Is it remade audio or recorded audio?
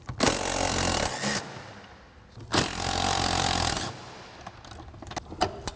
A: recorded